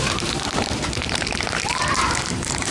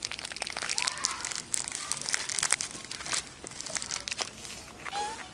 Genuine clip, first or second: second